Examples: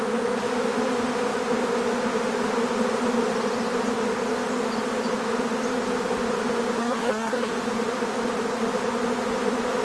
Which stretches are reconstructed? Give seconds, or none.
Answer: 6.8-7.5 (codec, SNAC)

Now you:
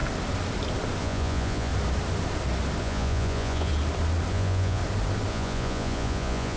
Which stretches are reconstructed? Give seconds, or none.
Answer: 1.0-1.7 (vocoder, Vocos); 2.8-3.7; 4.3-4.8; 5.3-6.6